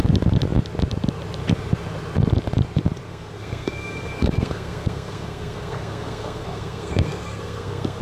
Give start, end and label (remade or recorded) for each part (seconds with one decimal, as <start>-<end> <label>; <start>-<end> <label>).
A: 0.0-3.1 recorded; 3.1-8.0 remade